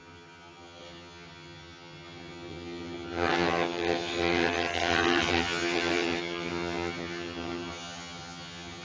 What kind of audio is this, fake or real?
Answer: fake